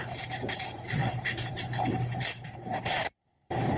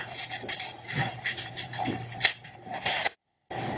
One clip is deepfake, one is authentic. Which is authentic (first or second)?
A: second